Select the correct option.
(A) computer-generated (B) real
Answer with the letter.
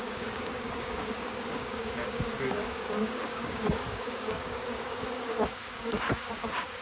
A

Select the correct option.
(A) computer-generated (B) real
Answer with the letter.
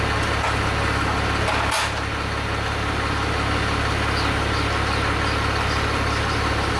B